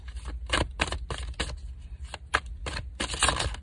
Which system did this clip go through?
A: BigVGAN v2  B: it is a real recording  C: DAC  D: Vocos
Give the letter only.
B